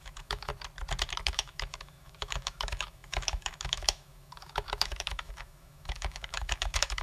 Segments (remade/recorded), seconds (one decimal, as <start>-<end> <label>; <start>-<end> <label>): 0.0-0.5 remade; 0.5-1.2 recorded; 1.2-7.0 remade